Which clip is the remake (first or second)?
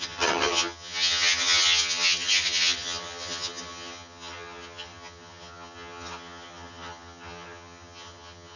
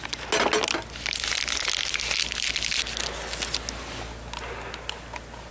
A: first